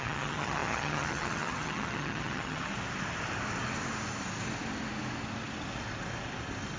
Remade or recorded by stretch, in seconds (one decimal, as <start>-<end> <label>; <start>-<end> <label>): 0.0-2.7 remade; 2.7-6.8 recorded